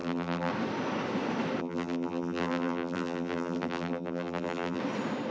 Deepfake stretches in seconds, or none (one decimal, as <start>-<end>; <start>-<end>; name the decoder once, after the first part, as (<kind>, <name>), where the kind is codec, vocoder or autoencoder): 0.0-0.5 (vocoder, BigVGAN v2); 1.6-4.8